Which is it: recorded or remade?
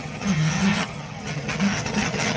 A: remade